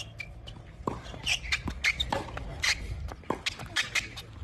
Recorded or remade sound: recorded